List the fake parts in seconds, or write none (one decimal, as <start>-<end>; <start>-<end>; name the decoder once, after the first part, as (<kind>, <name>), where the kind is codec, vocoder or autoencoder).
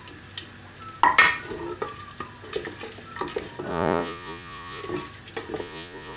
3.7-4.8 (vocoder, Vocos); 5.6-6.2